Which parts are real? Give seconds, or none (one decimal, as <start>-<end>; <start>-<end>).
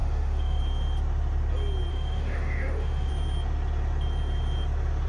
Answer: 0.6-1.9; 3.1-5.1